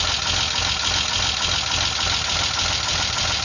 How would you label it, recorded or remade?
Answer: recorded